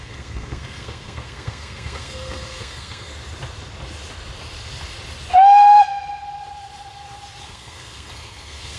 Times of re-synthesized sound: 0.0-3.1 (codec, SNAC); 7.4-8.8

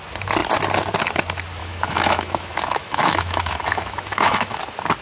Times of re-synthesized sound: 1.6-4.6 (autoencoder, DAC-VAE)

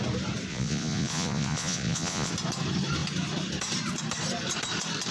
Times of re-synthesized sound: 0.5-2.3 (vocoder, Vocos)

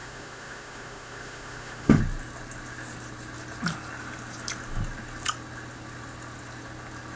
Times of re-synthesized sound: 0.0-2.0 (autoencoder, DAC-VAE)

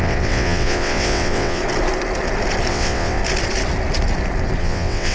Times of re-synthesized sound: 0.0-1.6 (vocoder, WaveNeXt); 2.7-3.2; 4.6-5.1